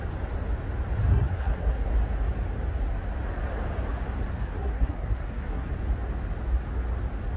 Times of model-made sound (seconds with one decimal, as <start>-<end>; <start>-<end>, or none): 1.1-1.9; 4.3-5.7